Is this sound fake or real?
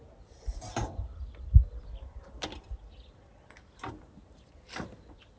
real